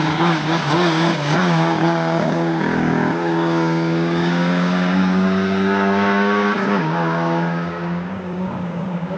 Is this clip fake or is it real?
fake